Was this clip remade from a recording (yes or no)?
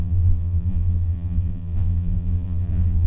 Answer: yes